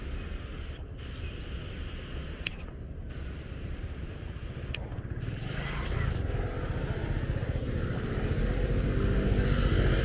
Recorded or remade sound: recorded